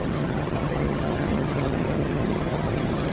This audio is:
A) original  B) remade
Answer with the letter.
B